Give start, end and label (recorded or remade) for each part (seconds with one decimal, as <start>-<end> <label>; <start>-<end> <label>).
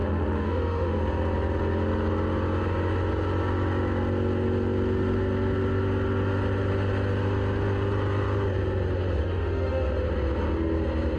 0.0-1.0 remade; 1.0-9.2 recorded; 9.2-10.0 remade; 10.0-11.2 recorded